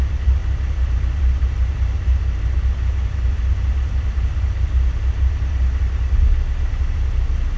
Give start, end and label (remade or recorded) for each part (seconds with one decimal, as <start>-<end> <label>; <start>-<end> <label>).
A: 0.0-7.6 recorded